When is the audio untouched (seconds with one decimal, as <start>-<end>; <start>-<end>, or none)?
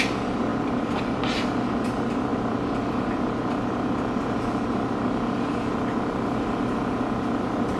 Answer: 0.0-7.8